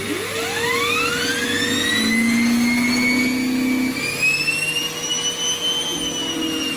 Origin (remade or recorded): recorded